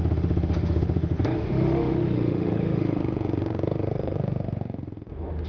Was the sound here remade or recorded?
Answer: remade